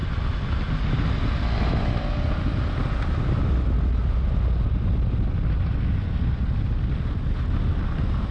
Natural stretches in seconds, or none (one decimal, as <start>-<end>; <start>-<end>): 0.0-8.3